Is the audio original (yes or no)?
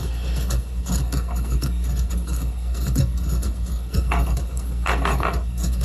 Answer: no